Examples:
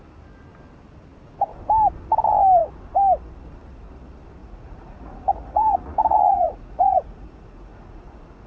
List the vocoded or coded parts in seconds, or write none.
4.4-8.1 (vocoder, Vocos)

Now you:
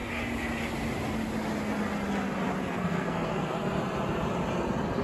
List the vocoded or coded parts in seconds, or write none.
2.6-3.8 (codec, SNAC)

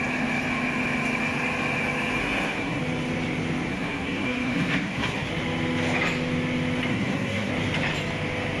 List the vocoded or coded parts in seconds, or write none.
2.2-2.8 (codec, SNAC); 3.7-5.3; 6.9-7.5

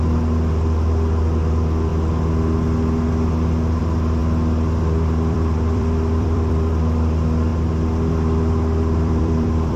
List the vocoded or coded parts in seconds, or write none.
0.0-1.9 (vocoder, BigVGAN v2); 3.8-4.2; 4.8-7.5; 8.1-9.8